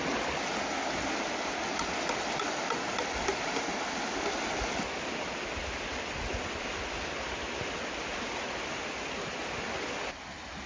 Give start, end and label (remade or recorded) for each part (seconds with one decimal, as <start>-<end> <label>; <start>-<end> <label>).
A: 0.0-8.1 recorded; 8.1-8.8 remade; 8.8-10.7 recorded